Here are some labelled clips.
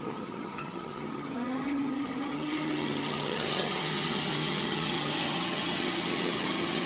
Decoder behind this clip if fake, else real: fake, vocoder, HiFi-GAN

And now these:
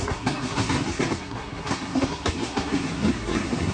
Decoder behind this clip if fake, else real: fake, codec, SNAC